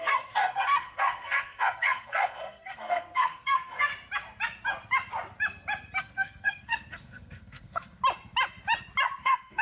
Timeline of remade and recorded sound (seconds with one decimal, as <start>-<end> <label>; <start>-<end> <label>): 0.0-3.9 remade; 3.9-6.0 recorded; 6.0-8.0 remade; 8.0-9.2 recorded; 9.2-9.6 remade